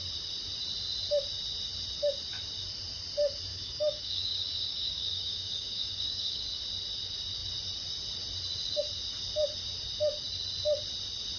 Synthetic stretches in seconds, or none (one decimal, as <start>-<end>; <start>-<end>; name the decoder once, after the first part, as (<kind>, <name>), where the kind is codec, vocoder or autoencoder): 3.5-6.6 (codec, DAC)